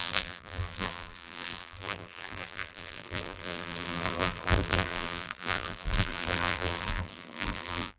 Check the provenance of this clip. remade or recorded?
remade